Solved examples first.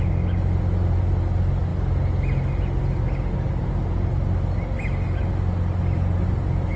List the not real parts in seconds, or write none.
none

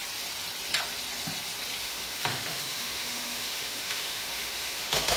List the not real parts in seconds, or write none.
1.8-5.2

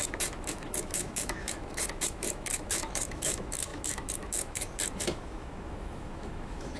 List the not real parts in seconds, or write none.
0.0-6.8

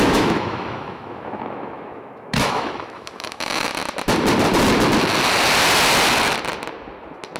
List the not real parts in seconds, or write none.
0.0-3.7

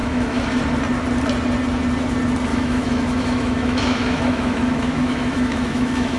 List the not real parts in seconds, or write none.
0.0-0.6; 2.5-6.2